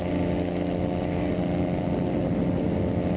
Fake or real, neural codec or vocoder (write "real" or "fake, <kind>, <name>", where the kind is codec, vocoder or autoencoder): real